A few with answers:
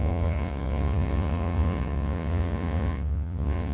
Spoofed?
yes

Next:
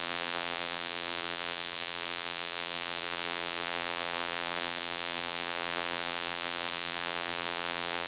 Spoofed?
yes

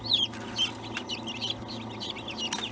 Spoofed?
no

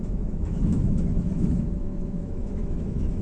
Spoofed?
yes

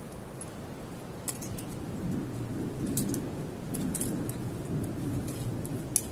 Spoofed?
no